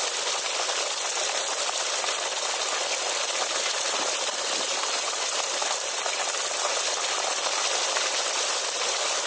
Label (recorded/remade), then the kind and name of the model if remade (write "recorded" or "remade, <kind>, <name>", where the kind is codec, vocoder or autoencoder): recorded